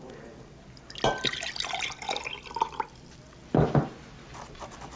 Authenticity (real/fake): real